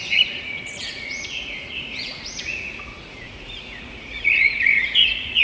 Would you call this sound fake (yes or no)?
yes